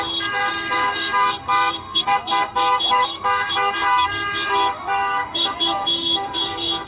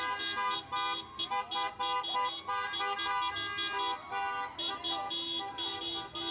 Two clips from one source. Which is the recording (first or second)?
second